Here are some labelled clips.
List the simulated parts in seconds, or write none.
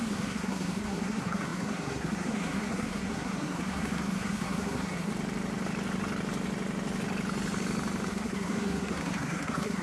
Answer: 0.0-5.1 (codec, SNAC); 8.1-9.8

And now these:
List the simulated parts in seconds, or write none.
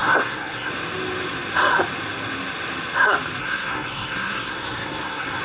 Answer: 0.0-0.7 (codec, SNAC); 3.4-5.4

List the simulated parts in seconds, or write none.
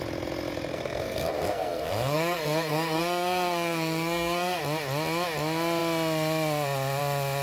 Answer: 0.7-4.6 (codec, SNAC)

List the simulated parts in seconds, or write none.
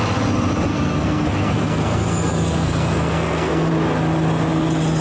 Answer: 0.7-3.7 (codec, SNAC)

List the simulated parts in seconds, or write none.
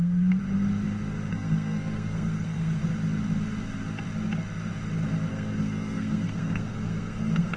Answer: 0.0-0.4 (codec, SNAC); 1.3-2.8; 5.3-7.6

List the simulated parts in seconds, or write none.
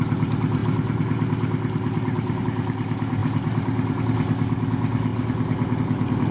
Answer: none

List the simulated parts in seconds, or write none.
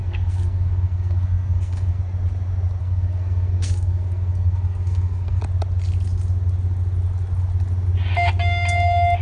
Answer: 0.0-2.0 (codec, SNAC); 2.8-5.4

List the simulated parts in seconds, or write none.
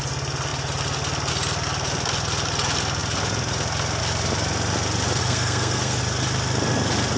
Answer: 5.2-6.0 (codec, SNAC)